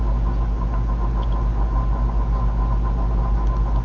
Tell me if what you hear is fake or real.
real